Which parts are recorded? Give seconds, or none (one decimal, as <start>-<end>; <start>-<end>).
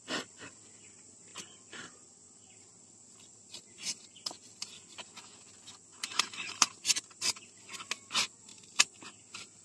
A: 0.0-1.3; 2.5-5.9; 7.4-9.6